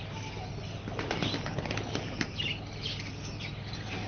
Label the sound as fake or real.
real